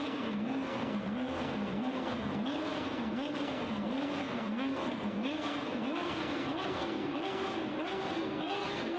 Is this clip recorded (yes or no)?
no